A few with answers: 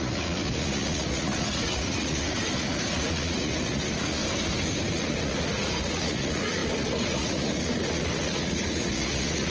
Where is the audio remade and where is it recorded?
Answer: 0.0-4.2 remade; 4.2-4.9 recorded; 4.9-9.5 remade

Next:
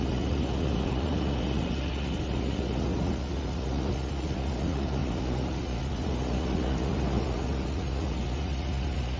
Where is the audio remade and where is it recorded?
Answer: 0.0-9.2 remade

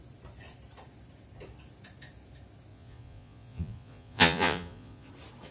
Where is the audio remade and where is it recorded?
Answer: 0.0-2.7 recorded; 2.7-5.1 remade; 5.1-5.5 recorded

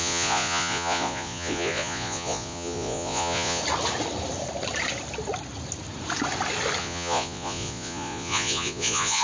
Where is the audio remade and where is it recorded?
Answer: 0.0-3.6 remade; 3.6-6.8 recorded; 6.8-9.2 remade

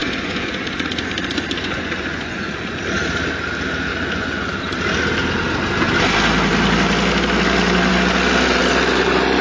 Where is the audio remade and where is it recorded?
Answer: 0.0-2.8 remade; 2.8-3.9 recorded; 3.9-4.5 remade; 4.5-9.4 recorded

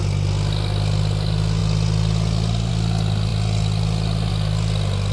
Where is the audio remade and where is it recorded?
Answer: 0.0-5.1 recorded

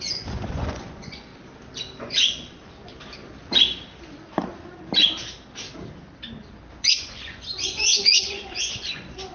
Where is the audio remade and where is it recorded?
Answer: 0.0-1.3 remade; 1.3-2.0 recorded; 2.0-2.9 remade; 2.9-6.8 recorded; 6.8-9.3 remade

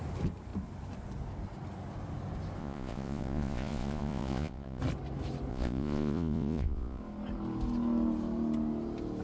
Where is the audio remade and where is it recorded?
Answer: 0.0-2.6 recorded; 2.6-4.8 remade; 4.8-5.5 recorded; 5.5-7.0 remade; 7.0-9.2 recorded